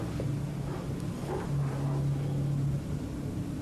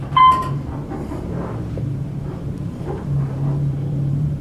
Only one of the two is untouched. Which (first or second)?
first